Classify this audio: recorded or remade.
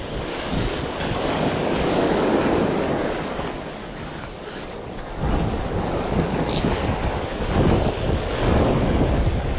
remade